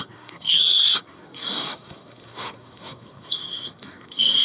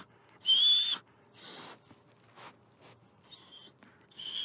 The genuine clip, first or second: second